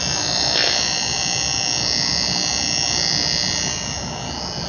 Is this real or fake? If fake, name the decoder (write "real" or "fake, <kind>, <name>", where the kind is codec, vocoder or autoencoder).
real